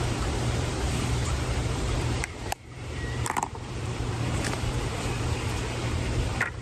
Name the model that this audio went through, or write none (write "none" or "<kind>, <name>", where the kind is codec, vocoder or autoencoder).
vocoder, BigVGAN v2